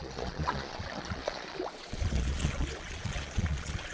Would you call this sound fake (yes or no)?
yes